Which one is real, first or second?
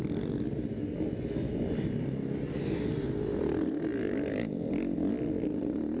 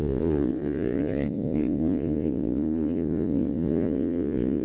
first